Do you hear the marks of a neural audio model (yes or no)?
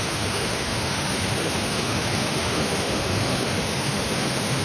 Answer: yes